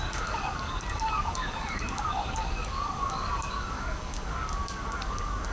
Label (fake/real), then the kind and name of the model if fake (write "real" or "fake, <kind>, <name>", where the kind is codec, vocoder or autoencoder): fake, codec, DAC